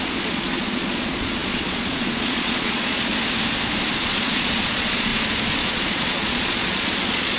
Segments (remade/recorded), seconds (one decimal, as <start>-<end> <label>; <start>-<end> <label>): 0.0-3.1 remade; 3.1-4.0 recorded; 4.0-5.1 remade; 5.1-5.6 recorded; 5.6-7.4 remade